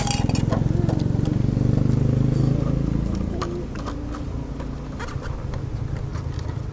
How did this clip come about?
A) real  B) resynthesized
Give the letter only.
A